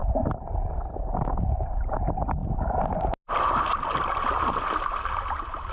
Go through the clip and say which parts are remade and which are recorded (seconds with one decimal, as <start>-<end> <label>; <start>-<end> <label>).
0.0-5.7 recorded